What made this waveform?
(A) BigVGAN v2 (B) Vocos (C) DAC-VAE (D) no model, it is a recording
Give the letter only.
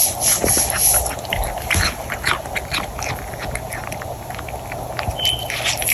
D